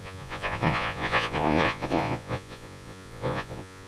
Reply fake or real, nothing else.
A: fake